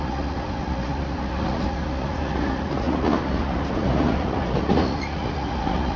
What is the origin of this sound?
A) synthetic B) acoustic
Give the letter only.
A